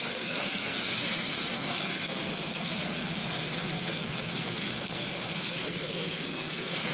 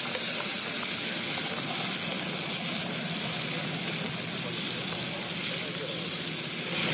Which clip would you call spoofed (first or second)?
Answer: first